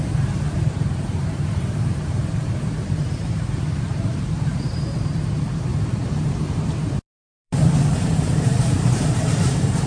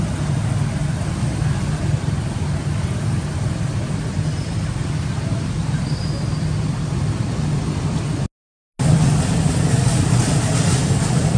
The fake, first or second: first